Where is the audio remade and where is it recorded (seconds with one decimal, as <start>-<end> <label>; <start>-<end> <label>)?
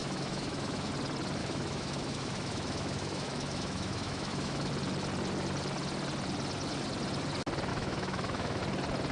0.0-0.9 remade; 0.9-1.4 recorded; 1.4-4.7 remade; 4.7-7.7 recorded; 7.7-8.6 remade; 8.6-9.1 recorded